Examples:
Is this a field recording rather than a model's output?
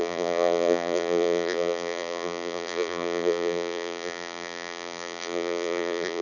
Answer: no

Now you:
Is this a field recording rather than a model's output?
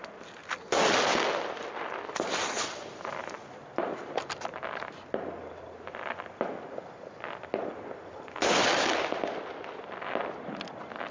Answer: yes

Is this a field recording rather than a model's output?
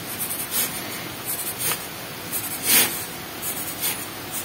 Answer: yes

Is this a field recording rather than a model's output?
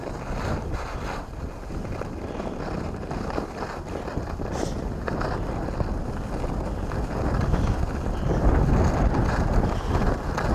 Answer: yes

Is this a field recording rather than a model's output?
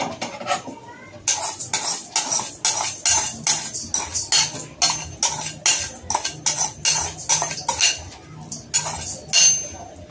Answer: yes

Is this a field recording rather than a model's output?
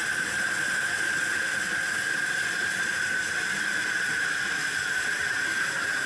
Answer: yes